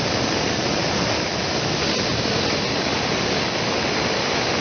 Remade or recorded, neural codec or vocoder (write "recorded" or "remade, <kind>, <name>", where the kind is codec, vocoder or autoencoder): recorded